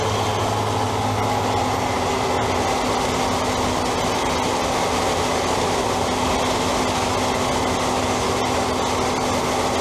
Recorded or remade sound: recorded